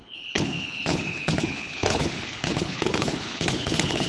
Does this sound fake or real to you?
fake